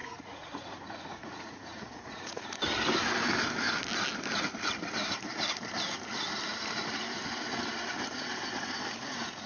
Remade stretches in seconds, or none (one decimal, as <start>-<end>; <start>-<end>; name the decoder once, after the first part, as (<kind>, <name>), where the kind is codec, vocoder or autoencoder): 0.0-2.4 (vocoder, Vocos)